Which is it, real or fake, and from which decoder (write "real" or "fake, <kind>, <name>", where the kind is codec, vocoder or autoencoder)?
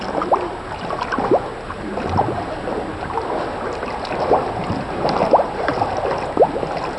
real